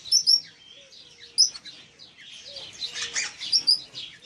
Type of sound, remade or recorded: recorded